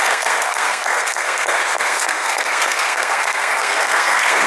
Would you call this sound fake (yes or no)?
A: yes